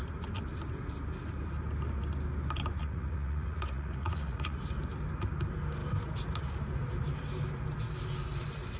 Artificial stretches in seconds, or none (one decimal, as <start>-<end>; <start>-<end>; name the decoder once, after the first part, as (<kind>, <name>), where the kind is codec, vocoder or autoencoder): 2.8-4.6 (vocoder, Vocos)